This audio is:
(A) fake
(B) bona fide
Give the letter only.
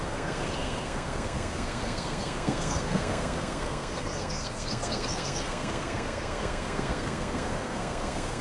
A